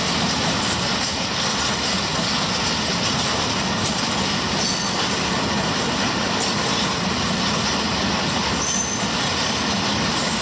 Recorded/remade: recorded